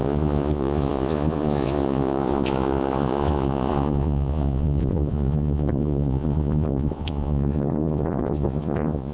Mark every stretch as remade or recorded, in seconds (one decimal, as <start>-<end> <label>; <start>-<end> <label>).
0.0-9.1 remade